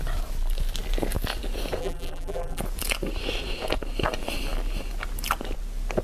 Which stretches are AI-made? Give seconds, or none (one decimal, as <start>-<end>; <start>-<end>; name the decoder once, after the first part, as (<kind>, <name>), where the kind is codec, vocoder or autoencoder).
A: 1.8-2.6 (vocoder, BigVGAN v2)